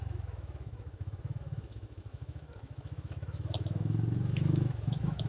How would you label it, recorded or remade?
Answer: remade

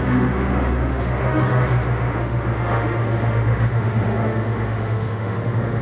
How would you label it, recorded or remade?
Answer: remade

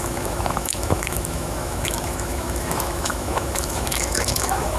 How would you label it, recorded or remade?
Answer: remade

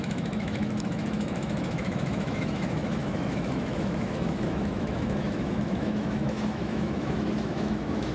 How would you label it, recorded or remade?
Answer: remade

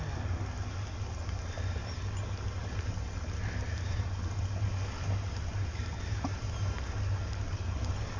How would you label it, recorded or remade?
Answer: recorded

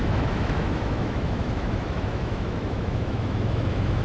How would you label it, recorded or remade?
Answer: remade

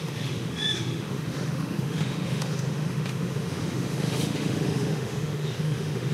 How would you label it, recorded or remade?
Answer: remade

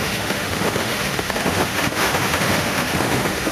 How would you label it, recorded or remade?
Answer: remade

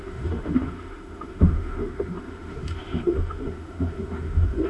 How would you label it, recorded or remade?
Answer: remade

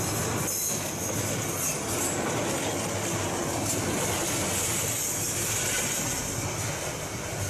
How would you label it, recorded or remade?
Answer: recorded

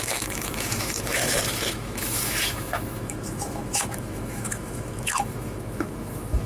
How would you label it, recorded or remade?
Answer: remade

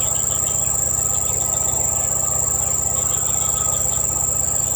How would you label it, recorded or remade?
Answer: recorded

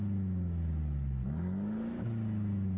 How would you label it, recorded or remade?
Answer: remade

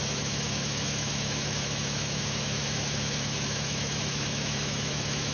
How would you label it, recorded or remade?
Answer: remade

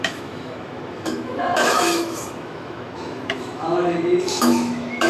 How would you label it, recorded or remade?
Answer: remade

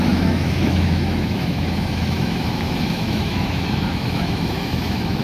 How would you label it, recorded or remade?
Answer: remade